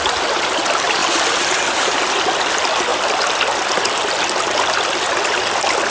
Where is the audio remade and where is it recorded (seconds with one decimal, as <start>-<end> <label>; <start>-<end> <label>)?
0.0-5.9 recorded